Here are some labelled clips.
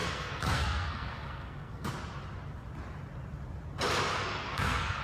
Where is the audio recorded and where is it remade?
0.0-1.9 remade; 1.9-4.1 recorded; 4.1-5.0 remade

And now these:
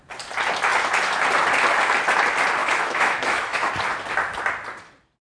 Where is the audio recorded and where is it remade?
0.0-2.6 recorded; 2.6-3.7 remade; 3.7-5.2 recorded

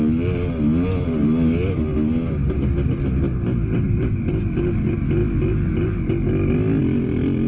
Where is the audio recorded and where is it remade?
0.0-7.5 recorded

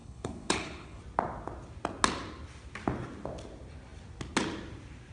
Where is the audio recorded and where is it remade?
0.0-1.0 remade; 1.0-5.1 recorded

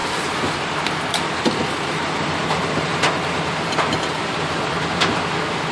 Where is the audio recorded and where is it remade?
0.0-3.4 remade; 3.4-5.7 recorded

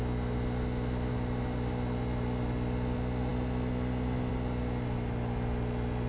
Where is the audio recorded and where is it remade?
0.0-6.1 recorded

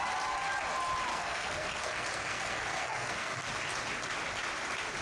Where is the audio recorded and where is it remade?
0.0-1.1 recorded; 1.1-3.5 remade; 3.5-5.0 recorded

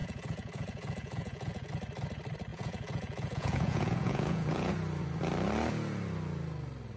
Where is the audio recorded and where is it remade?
0.0-1.7 remade; 1.7-2.5 recorded; 2.5-4.7 remade; 4.7-7.0 recorded